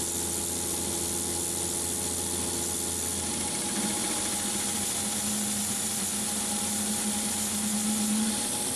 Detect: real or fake real